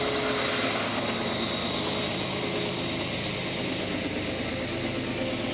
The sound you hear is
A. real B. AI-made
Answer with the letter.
A